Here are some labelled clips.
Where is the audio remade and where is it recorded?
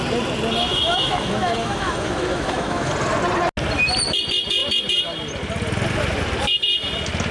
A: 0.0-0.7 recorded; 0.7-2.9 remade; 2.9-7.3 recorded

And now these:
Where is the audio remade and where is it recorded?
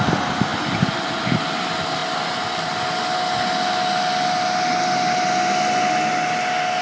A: 0.0-6.8 recorded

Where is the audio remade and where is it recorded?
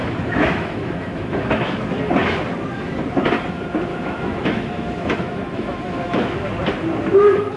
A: 0.0-1.8 remade; 1.8-3.9 recorded; 3.9-6.5 remade; 6.5-7.6 recorded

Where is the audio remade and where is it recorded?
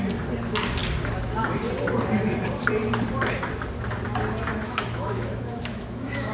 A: 0.0-4.5 recorded; 4.5-6.3 remade